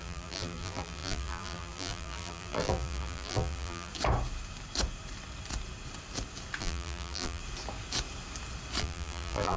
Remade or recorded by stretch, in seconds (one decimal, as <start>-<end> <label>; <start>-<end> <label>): 0.0-3.9 remade; 3.9-6.6 recorded; 6.6-7.4 remade; 7.4-8.8 recorded; 8.8-9.6 remade